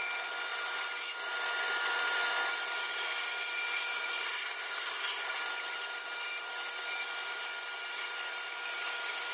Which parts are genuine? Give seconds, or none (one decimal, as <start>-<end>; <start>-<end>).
0.0-4.2; 5.4-9.3